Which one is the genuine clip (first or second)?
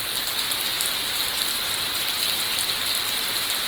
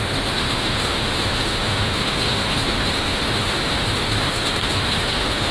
first